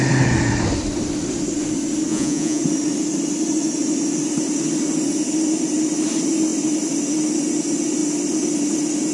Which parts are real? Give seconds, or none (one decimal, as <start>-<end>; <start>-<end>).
0.0-2.1; 2.6-9.1